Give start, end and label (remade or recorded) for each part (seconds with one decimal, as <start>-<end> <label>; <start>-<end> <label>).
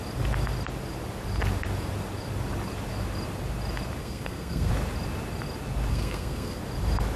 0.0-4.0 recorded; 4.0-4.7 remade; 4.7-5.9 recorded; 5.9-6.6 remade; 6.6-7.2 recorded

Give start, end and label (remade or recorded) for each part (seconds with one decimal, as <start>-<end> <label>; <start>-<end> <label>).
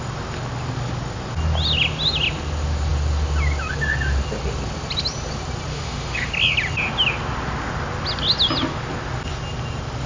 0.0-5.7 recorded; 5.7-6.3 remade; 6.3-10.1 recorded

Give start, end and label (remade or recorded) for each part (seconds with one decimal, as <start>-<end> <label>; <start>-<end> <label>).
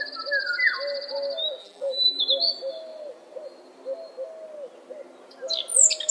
0.0-1.6 recorded; 1.6-2.2 remade; 2.2-6.1 recorded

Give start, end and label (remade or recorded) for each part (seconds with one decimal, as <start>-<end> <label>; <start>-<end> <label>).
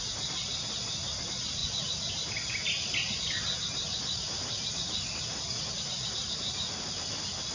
0.0-7.5 recorded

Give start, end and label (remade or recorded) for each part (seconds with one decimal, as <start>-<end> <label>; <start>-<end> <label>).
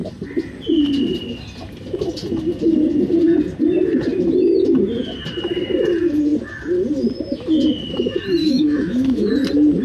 0.0-8.4 recorded; 8.4-9.3 remade; 9.3-9.8 recorded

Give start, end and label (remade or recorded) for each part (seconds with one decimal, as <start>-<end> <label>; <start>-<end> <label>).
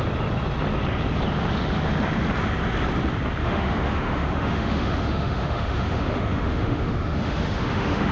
0.0-3.4 recorded; 3.4-8.1 remade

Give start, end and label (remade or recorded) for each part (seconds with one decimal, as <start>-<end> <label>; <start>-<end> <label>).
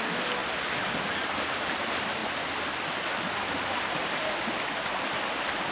0.0-5.7 recorded